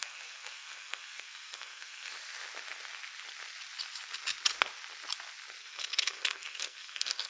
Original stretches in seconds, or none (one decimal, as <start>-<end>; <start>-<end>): 2.1-5.6